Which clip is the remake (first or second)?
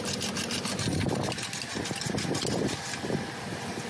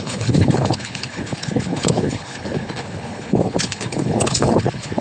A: second